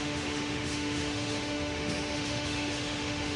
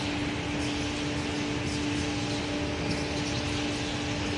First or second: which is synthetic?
first